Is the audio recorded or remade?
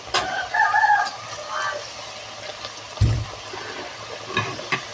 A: recorded